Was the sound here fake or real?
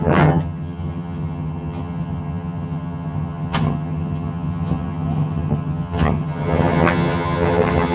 fake